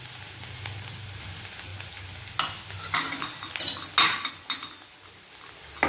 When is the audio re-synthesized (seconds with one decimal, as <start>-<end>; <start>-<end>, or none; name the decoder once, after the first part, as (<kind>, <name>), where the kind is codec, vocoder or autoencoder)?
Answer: none